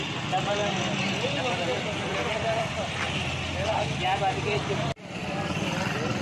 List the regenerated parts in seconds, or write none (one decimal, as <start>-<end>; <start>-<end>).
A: 0.6-1.4; 2.1-2.8; 5.2-5.8